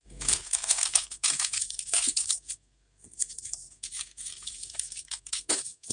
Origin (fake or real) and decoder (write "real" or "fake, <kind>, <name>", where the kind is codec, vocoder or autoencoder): fake, codec, SNAC